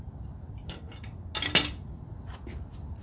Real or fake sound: real